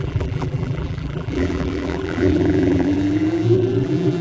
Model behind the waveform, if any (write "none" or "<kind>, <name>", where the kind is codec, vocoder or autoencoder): vocoder, BigVGAN v2